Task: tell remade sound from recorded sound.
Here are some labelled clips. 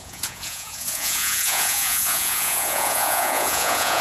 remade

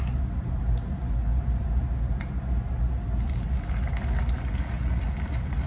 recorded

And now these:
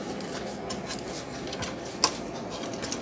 recorded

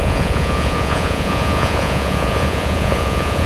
remade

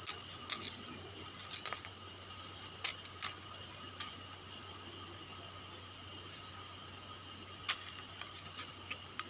recorded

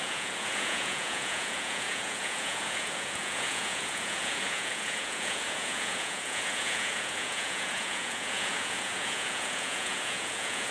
remade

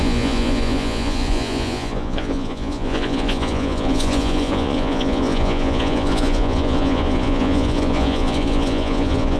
remade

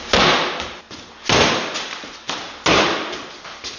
recorded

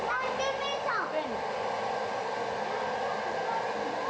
recorded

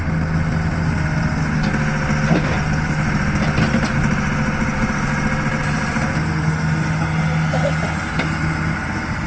recorded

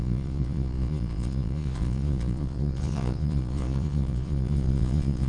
remade